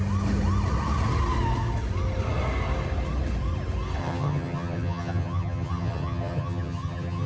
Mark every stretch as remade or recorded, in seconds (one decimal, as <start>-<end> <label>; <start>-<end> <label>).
0.0-4.0 recorded; 4.0-7.3 remade